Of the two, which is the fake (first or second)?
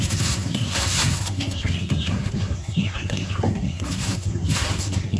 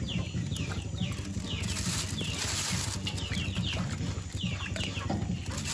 first